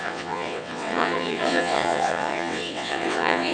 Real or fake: fake